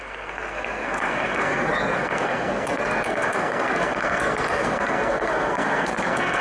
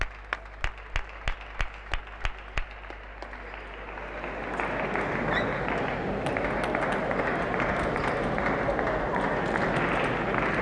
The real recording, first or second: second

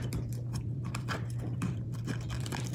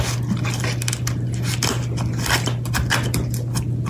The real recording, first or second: second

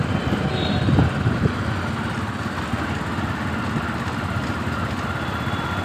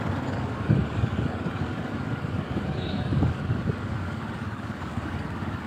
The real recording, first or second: first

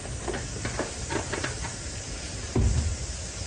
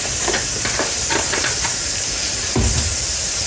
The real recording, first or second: first